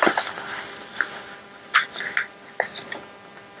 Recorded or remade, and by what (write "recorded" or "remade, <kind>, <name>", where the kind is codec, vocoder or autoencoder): recorded